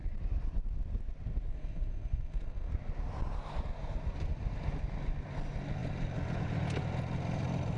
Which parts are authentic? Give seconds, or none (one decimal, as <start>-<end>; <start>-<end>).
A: 0.0-1.5; 2.7-7.8